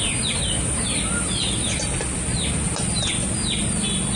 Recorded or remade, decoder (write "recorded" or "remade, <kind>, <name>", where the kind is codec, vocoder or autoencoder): recorded